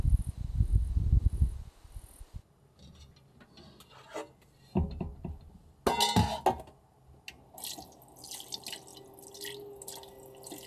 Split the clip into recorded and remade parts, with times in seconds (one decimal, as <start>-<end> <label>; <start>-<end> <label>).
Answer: 0.0-10.7 recorded